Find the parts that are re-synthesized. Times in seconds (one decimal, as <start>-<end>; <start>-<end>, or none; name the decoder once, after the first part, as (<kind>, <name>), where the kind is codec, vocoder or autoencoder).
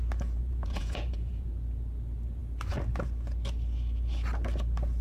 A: 0.4-1.5 (vocoder, Vocos)